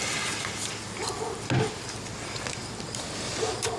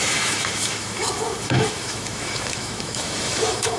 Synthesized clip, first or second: second